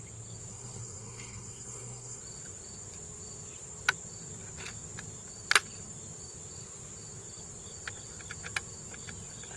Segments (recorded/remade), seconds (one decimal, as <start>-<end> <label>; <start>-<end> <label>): 0.0-0.5 recorded; 0.5-2.2 remade; 2.2-9.6 recorded